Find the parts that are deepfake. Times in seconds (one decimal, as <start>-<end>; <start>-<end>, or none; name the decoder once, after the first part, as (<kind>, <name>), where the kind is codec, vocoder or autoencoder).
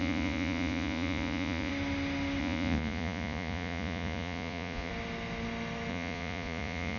0.0-1.7 (vocoder, Vocos); 2.4-4.9; 5.9-7.0